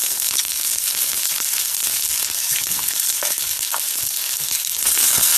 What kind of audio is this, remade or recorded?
remade